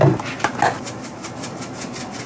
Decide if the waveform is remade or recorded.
recorded